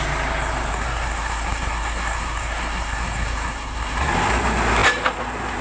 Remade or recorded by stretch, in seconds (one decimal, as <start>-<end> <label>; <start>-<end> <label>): 0.0-0.7 recorded; 0.7-4.1 remade; 4.1-5.6 recorded